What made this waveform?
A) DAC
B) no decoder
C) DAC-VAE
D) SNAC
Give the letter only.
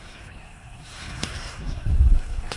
D